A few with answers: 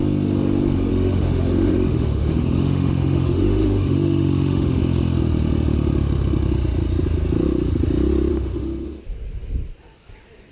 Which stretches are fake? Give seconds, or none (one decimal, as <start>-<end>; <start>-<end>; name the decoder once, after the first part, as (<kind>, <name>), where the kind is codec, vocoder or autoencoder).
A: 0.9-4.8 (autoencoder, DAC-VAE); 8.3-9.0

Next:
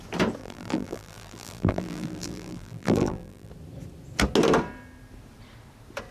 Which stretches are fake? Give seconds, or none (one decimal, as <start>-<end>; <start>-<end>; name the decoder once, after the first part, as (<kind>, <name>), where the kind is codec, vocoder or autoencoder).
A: 0.4-3.5 (vocoder, BigVGAN v2)

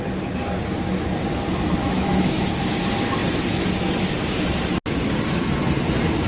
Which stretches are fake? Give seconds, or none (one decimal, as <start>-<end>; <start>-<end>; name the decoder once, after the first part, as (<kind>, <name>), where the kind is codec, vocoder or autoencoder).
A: 1.8-2.8 (autoencoder, DAC-VAE)

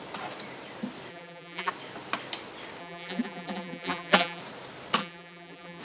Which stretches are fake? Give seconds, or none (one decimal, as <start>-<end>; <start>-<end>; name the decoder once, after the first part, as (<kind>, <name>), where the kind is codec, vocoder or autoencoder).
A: 1.1-1.7 (vocoder, BigVGAN v2); 2.8-4.4; 5.0-5.8